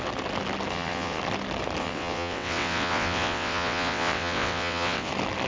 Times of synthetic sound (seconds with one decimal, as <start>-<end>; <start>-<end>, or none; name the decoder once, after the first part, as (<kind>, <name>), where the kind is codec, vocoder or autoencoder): 0.7-1.2 (vocoder, WaveNeXt); 1.8-5.1